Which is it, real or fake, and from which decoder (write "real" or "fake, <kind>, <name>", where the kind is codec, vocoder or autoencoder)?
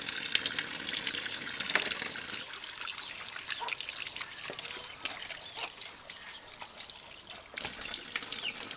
real